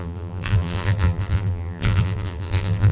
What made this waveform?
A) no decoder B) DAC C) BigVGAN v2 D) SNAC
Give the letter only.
C